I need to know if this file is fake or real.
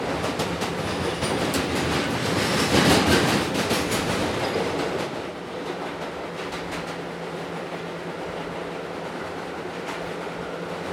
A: real